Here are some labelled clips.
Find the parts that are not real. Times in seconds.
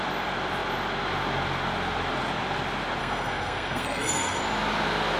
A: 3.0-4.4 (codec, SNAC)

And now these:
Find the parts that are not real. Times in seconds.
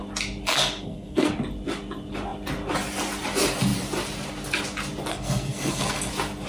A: 0.5-1.3 (codec, SNAC); 5.1-6.1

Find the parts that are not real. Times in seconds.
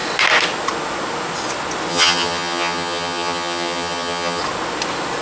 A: 1.9-4.4 (vocoder, HiFi-GAN)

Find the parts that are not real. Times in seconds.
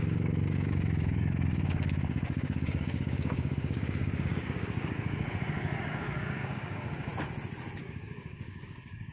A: 0.0-7.1 (codec, DAC); 7.8-9.1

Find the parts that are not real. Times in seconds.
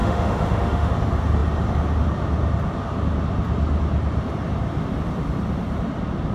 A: 0.0-0.9 (autoencoder, DAC-VAE)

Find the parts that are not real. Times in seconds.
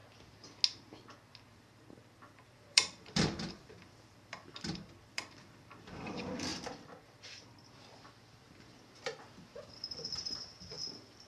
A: 1.5-11.3 (vocoder, BigVGAN v2)